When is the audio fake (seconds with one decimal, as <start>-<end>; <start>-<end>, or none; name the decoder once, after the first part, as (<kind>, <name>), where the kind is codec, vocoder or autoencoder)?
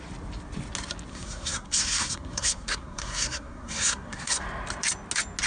1.1-4.4 (codec, SNAC)